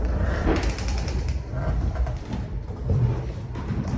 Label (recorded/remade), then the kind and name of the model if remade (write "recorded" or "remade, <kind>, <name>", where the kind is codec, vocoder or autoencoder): remade, vocoder, BigVGAN v2